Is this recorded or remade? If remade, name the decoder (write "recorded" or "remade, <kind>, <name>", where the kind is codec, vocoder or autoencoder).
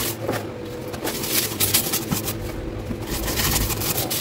remade, vocoder, BigVGAN v2